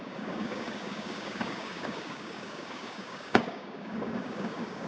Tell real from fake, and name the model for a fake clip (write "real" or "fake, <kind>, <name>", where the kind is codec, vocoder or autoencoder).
fake, codec, DAC